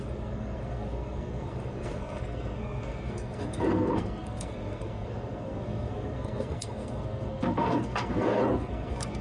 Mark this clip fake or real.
fake